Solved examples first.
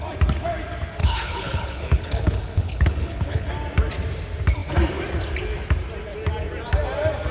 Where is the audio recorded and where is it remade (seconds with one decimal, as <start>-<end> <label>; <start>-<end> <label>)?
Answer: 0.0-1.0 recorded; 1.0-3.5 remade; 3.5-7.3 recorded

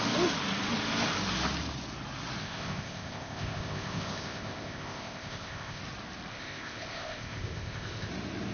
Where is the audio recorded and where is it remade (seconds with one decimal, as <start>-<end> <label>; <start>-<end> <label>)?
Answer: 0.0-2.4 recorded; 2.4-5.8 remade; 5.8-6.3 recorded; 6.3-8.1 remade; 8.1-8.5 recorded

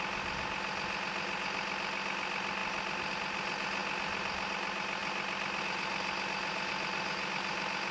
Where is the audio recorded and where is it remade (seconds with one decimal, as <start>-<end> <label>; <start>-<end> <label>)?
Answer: 0.0-7.9 recorded

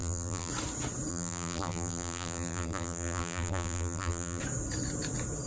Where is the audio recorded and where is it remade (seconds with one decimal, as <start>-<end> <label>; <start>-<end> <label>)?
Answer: 0.0-0.5 remade; 0.5-1.1 recorded; 1.1-4.4 remade; 4.4-5.5 recorded

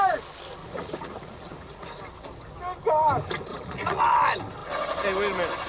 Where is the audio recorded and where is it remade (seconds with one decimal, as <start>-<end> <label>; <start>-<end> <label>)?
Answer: 0.0-0.6 recorded; 0.6-2.0 remade; 2.0-3.5 recorded; 3.5-4.0 remade; 4.0-5.7 recorded

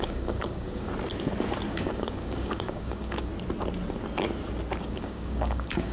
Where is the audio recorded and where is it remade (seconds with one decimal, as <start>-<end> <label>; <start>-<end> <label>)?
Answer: 0.0-0.9 remade; 0.9-1.7 recorded; 1.7-3.3 remade; 3.3-4.8 recorded; 4.8-5.9 remade